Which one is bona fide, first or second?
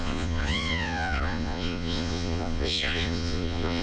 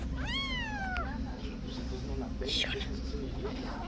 second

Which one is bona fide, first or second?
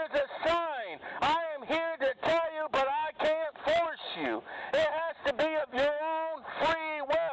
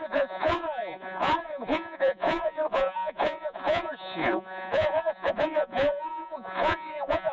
first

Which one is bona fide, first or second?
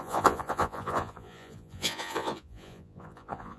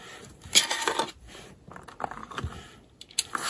second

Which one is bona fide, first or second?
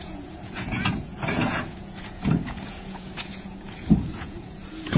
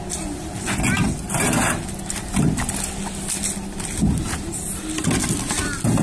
second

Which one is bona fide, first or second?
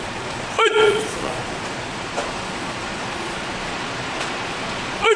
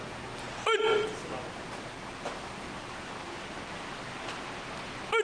second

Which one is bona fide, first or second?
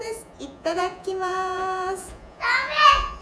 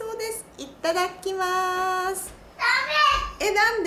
second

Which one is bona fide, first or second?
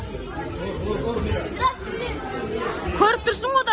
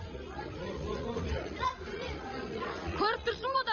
first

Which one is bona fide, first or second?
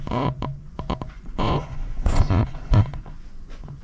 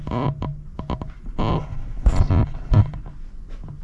second